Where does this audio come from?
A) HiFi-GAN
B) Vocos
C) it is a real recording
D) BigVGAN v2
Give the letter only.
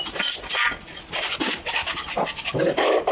C